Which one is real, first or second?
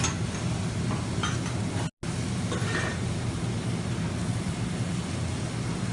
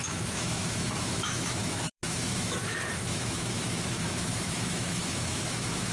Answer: first